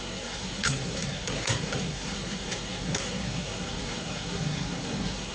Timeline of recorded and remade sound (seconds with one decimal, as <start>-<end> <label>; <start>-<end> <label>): 0.0-5.3 remade